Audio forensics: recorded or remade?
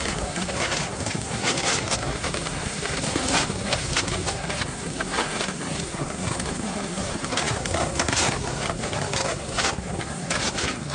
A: remade